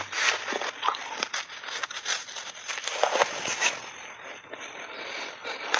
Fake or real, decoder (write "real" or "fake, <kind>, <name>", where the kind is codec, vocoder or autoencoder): real